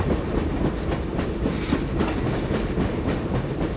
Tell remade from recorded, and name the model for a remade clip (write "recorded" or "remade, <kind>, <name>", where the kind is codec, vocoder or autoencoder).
recorded